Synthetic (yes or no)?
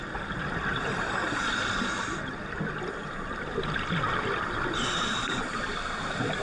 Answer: no